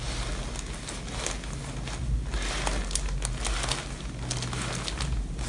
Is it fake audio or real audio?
real